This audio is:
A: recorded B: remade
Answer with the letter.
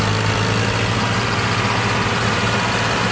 A